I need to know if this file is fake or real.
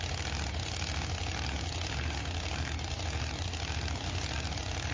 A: real